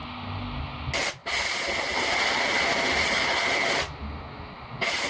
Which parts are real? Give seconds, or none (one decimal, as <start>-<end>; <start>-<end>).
0.0-5.1